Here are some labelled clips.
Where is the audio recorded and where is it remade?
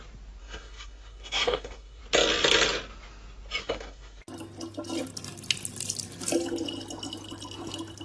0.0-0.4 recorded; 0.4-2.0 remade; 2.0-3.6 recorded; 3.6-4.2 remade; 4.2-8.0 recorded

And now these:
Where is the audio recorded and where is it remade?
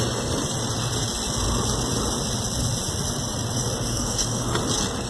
0.0-3.9 recorded; 3.9-4.5 remade; 4.5-5.1 recorded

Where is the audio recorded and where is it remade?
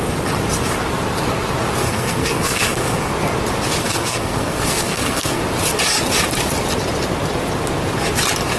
0.0-1.8 recorded; 1.8-3.1 remade; 3.1-3.8 recorded; 3.8-5.4 remade; 5.4-8.6 recorded